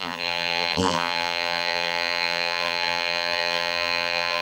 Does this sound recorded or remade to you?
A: remade